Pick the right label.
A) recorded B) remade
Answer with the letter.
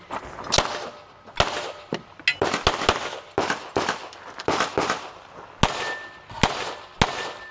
A